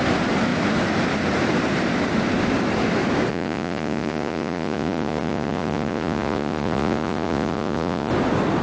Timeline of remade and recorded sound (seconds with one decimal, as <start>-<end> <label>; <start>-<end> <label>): 0.0-3.3 recorded; 3.3-8.1 remade; 8.1-8.6 recorded